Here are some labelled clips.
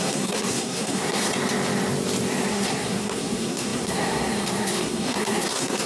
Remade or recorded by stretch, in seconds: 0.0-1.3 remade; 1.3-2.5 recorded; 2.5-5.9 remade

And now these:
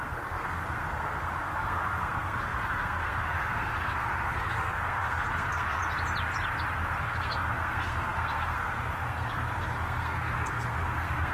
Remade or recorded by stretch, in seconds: 0.0-5.8 remade; 5.8-7.0 recorded; 7.0-11.3 remade

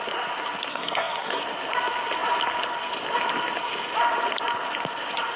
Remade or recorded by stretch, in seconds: 0.0-0.7 recorded; 0.7-1.4 remade; 1.4-5.4 recorded

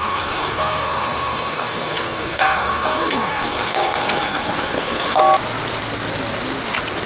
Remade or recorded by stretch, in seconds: 0.0-5.2 remade; 5.2-7.1 recorded

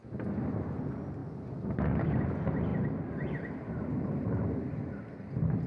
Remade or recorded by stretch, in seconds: 0.0-5.7 recorded

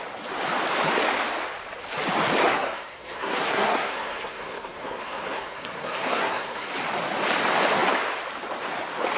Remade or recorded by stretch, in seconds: 0.0-2.4 recorded; 2.4-6.7 remade; 6.7-9.2 recorded

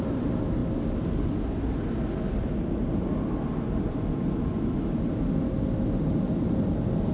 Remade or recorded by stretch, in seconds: 0.0-7.1 recorded